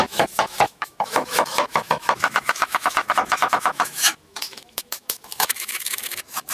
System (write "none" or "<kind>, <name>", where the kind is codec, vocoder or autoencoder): autoencoder, DAC-VAE